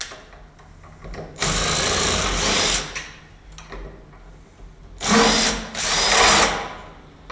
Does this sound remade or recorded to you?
recorded